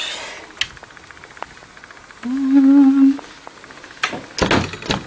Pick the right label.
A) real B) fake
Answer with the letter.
A